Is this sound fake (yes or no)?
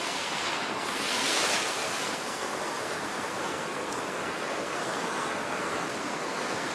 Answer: yes